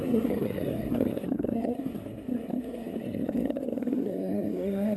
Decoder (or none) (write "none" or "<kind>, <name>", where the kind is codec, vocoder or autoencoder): codec, SNAC